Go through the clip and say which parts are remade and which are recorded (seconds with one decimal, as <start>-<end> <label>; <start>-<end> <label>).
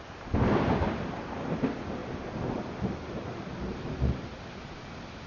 0.0-5.3 recorded